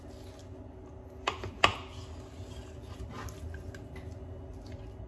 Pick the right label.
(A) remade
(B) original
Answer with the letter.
B